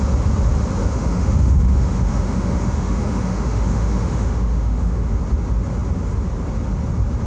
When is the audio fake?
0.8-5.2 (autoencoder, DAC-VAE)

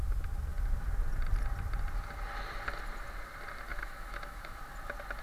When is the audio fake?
3.7-4.6 (autoencoder, DAC-VAE)

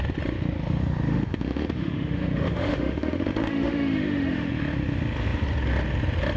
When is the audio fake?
1.1-4.5 (autoencoder, DAC-VAE)

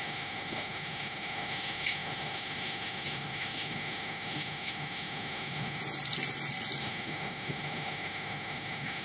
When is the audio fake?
0.0-5.8 (autoencoder, DAC-VAE); 6.8-9.0

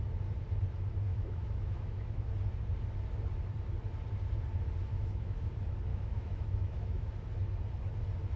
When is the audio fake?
1.1-2.3 (autoencoder, DAC-VAE); 4.9-5.5; 5.9-7.1

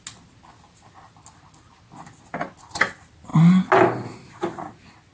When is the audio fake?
none

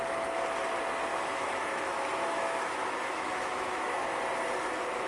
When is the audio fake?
1.1-4.2 (autoencoder, DAC-VAE)

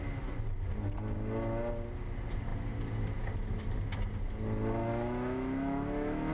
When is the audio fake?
4.8-6.3 (autoencoder, DAC-VAE)